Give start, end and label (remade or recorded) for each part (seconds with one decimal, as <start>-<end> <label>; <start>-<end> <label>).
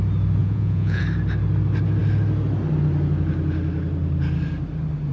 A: 0.0-0.4 recorded; 0.4-1.0 remade; 1.0-5.1 recorded